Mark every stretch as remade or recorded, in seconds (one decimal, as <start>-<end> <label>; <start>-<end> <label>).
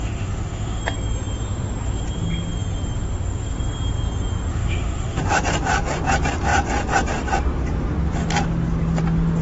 0.0-0.8 remade; 0.8-4.5 recorded; 4.5-5.4 remade; 5.4-9.4 recorded